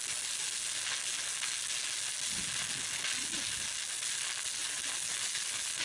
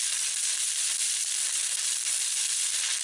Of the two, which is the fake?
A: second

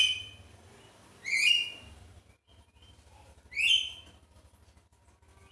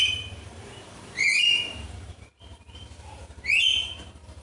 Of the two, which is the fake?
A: second